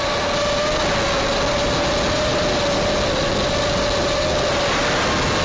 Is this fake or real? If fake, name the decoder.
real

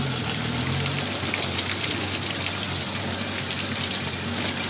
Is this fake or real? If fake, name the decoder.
real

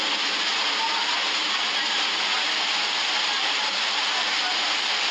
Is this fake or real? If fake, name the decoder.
real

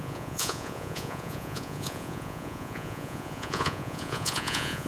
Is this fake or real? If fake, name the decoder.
fake, vocoder, Vocos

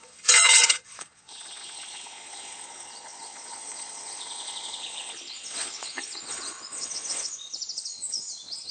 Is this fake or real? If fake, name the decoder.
fake, vocoder, Vocos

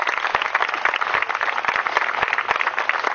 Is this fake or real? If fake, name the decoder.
real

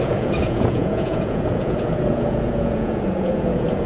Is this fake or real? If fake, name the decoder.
fake, vocoder, Vocos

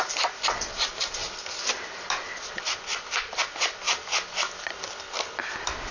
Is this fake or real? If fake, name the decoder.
real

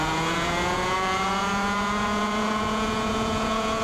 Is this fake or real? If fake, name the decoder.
fake, vocoder, Vocos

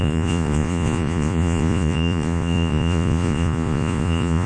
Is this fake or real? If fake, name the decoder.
fake, vocoder, Vocos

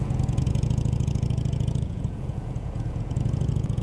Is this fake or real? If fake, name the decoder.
fake, vocoder, Vocos